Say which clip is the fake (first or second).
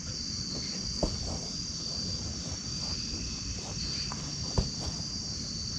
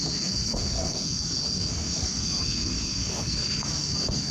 second